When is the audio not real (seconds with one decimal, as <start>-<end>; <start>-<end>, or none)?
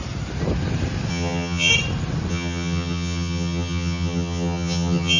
1.1-1.7; 2.3-5.2